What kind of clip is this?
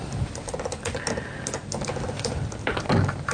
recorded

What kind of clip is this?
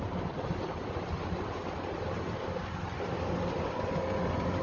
recorded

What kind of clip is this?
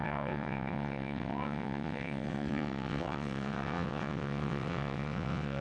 remade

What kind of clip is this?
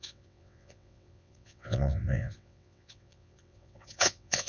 remade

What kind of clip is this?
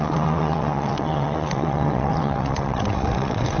remade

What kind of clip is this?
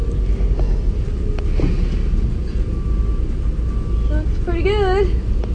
recorded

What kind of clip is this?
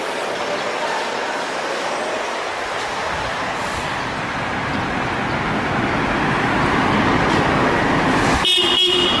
recorded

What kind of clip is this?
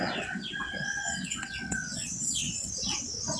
remade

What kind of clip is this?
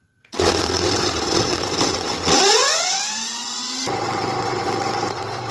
remade